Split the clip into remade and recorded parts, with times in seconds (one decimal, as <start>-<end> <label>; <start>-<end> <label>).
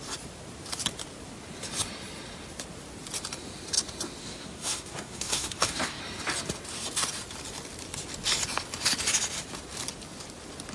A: 0.0-4.2 recorded; 4.2-6.0 remade; 6.0-10.7 recorded